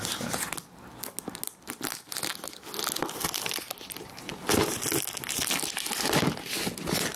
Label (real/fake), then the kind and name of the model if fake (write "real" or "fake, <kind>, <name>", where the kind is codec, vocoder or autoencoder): real